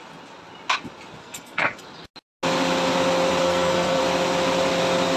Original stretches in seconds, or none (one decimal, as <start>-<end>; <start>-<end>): 0.0-1.2; 1.8-3.4; 4.0-5.2